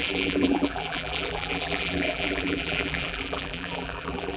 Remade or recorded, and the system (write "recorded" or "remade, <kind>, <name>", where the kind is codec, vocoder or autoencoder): remade, vocoder, BigVGAN v2